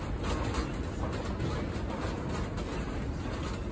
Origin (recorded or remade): recorded